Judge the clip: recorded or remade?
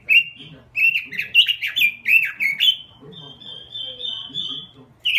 recorded